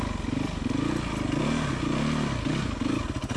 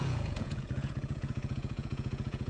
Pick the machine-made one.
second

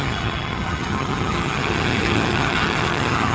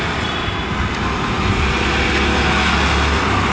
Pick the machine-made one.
first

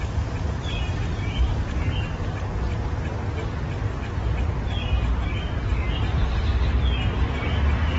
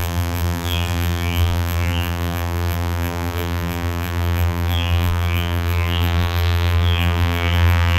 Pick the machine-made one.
second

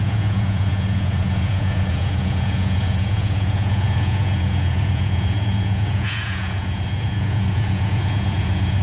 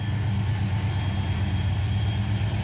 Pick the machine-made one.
first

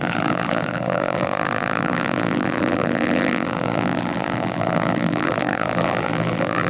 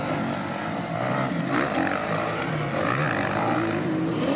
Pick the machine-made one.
first